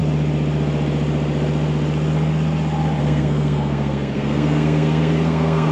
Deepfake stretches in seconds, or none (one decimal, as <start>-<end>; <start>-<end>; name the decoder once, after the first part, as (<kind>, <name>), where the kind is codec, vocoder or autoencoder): 3.0-5.7 (codec, SNAC)